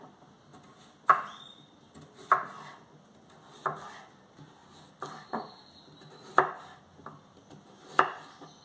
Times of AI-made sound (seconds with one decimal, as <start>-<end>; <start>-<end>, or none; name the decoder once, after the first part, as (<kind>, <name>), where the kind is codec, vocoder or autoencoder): none